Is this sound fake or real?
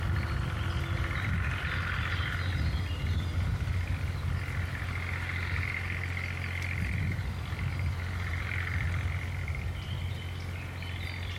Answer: real